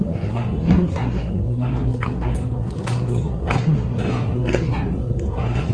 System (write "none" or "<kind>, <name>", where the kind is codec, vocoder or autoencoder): codec, SNAC